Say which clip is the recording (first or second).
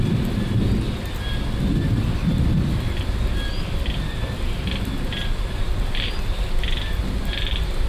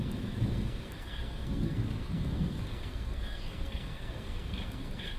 first